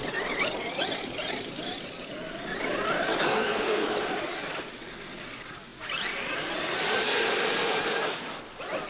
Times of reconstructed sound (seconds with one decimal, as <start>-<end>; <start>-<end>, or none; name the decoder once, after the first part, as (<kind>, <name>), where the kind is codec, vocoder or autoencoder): 3.1-4.1 (codec, DAC)

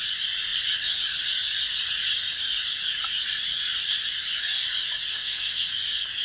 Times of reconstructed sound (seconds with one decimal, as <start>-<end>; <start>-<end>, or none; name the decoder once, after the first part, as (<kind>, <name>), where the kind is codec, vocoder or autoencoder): 5.1-5.7 (codec, SNAC)

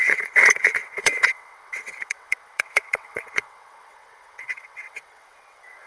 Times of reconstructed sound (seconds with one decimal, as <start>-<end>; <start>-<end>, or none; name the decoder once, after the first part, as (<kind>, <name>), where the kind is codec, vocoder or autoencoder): 0.0-5.9 (vocoder, WaveNeXt)

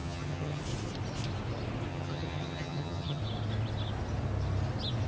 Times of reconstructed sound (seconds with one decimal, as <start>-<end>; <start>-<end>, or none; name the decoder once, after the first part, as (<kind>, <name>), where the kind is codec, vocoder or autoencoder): 0.0-0.6 (vocoder, HiFi-GAN); 1.9-3.2